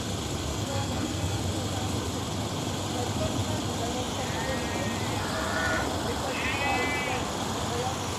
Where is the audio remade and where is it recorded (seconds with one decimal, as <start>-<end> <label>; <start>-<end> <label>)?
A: 0.0-0.5 recorded; 0.5-1.4 remade; 1.4-8.2 recorded